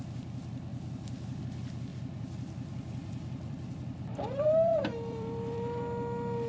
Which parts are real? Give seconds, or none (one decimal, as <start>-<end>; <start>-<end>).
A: 0.0-0.7; 1.4-1.9; 5.8-6.5

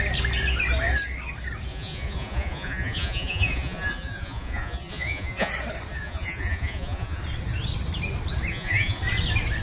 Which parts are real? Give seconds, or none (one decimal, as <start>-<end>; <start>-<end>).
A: 0.0-1.7; 5.5-5.9; 7.2-8.5; 9.0-9.6

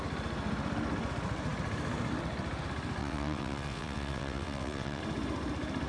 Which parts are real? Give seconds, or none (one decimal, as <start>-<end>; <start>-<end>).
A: 0.0-3.0; 5.0-5.9

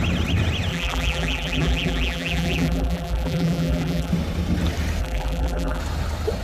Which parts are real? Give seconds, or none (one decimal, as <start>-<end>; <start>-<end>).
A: 0.0-0.7; 4.1-5.0; 5.8-6.4

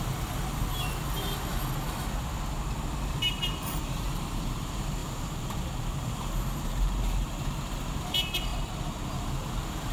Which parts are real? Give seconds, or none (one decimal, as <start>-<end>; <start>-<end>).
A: 0.6-3.1; 8.5-9.1

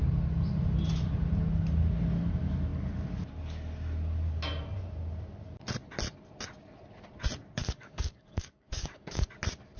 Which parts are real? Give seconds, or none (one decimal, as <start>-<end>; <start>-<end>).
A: 0.0-7.6; 9.3-9.8

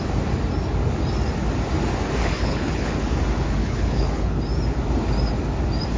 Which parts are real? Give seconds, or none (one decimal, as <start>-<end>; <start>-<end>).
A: 0.0-2.2; 3.1-3.6; 4.4-6.0